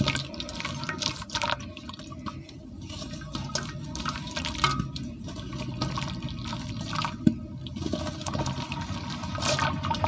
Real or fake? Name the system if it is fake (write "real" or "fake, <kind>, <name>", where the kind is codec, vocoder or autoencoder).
real